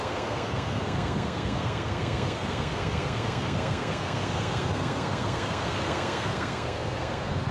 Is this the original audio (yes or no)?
no